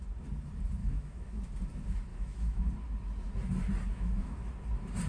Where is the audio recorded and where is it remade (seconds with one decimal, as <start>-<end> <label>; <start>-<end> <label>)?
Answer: 0.0-0.8 recorded; 0.8-1.4 remade; 1.4-2.1 recorded; 2.1-2.7 remade; 2.7-3.9 recorded; 3.9-4.5 remade; 4.5-5.1 recorded